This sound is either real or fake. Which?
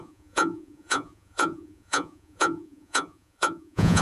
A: fake